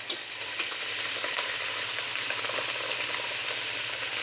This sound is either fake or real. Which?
real